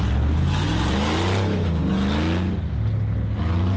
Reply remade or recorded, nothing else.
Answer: recorded